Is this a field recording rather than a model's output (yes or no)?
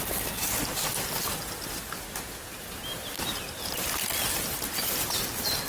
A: yes